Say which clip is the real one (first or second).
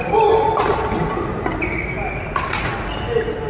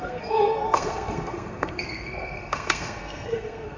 first